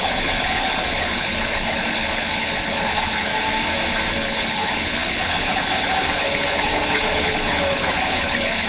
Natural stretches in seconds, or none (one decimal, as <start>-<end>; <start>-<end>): 3.3-4.1

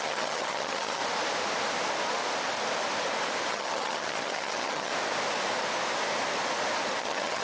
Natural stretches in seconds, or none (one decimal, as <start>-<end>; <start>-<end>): 1.0-3.5; 4.9-7.0

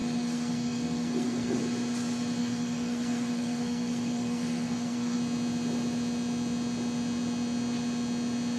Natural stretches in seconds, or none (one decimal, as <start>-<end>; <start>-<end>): 1.6-2.4; 5.2-8.6

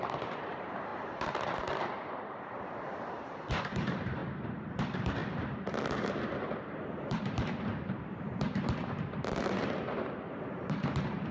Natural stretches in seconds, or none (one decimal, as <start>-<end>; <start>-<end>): 4.2-4.7

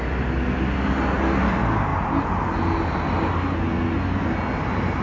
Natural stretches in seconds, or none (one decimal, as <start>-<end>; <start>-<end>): 0.0-5.0